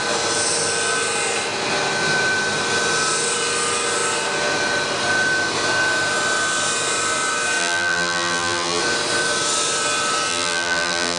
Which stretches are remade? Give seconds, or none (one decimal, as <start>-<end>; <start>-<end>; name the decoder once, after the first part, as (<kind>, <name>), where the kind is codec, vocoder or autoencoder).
7.6-8.8 (vocoder, BigVGAN v2); 10.3-11.2